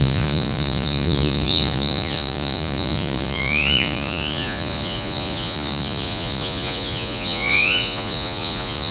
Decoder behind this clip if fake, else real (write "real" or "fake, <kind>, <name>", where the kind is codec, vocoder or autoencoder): fake, vocoder, Vocos